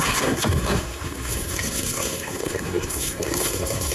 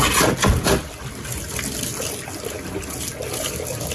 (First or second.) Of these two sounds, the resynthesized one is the first